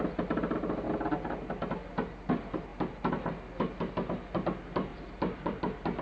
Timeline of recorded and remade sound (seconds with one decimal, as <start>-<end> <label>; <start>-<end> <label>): 0.0-4.9 recorded; 4.9-5.6 remade; 5.6-6.0 recorded